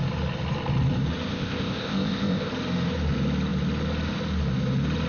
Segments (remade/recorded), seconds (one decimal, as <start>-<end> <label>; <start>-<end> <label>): 0.0-1.3 recorded; 1.3-2.5 remade; 2.5-5.1 recorded